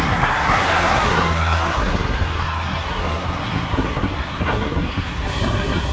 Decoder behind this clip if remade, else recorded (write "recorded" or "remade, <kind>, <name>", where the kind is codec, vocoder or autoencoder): remade, codec, SNAC